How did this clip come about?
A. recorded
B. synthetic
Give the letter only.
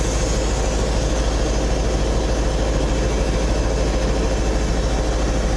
A